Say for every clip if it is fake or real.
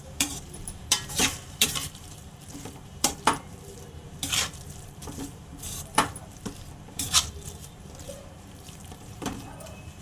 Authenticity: fake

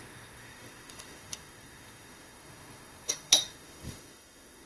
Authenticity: fake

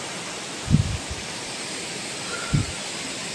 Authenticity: real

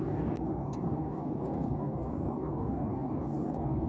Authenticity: fake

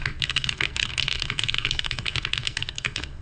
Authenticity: fake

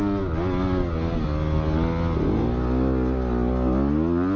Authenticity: real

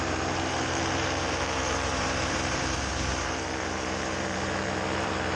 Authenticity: fake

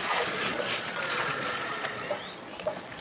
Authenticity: fake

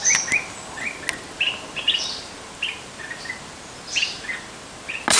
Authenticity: real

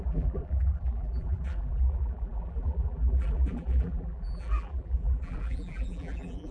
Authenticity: fake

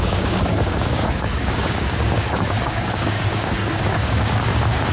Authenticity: fake